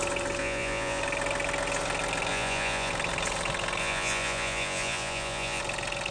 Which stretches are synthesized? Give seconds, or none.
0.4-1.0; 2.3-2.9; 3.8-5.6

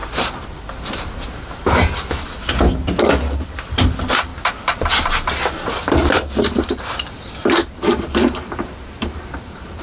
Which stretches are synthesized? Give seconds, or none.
0.0-2.1; 4.3-9.8

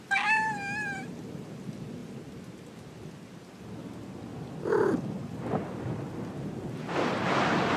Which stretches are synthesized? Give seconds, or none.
3.8-5.9